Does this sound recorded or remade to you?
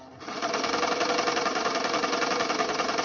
recorded